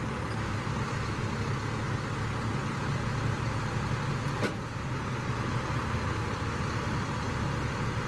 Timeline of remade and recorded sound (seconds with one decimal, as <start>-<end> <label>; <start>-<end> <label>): 0.0-8.1 recorded